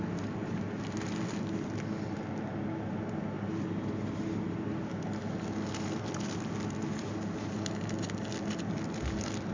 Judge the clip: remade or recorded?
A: recorded